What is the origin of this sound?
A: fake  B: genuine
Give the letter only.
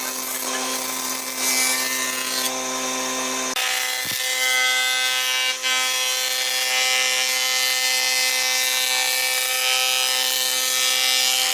B